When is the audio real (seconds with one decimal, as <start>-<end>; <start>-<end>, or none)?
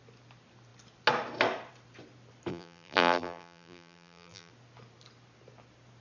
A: 0.0-2.5; 4.5-6.0